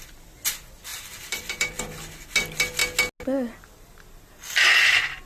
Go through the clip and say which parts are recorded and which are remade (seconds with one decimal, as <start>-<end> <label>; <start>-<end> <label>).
0.0-0.9 recorded; 0.9-1.8 remade; 1.8-5.3 recorded